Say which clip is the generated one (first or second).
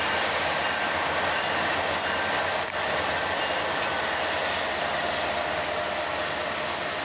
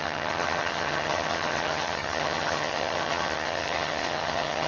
second